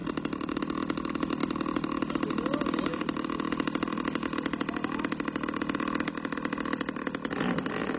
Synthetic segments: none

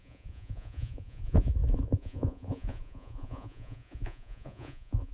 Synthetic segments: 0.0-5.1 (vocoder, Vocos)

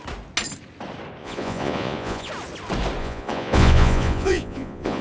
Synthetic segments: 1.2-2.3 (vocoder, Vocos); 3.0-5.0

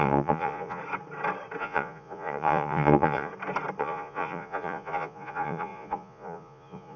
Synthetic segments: 0.0-0.8 (vocoder, Vocos); 1.6-3.3; 3.8-7.0

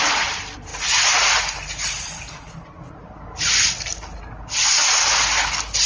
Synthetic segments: none

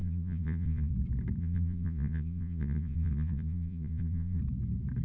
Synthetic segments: 0.0-0.9 (vocoder, Vocos); 1.4-4.4

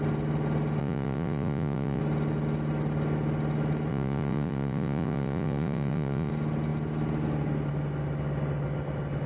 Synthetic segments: 0.8-2.0 (vocoder, Vocos); 3.9-6.3